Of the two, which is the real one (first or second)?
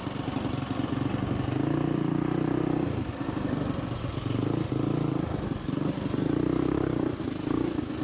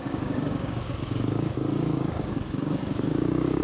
first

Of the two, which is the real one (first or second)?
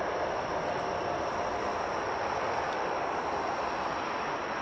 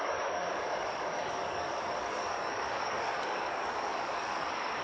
first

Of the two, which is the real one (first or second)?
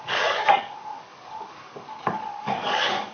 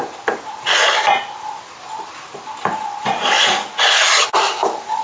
second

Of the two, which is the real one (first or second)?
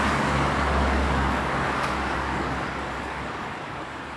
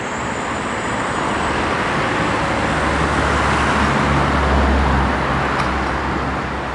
second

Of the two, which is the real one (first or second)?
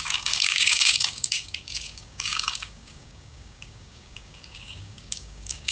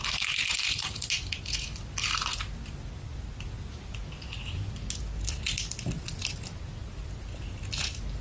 second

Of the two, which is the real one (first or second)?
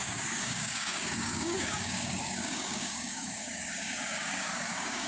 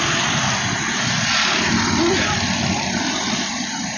second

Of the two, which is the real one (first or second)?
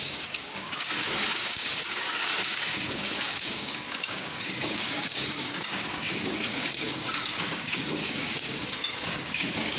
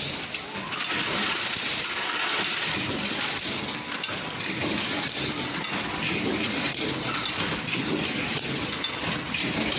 second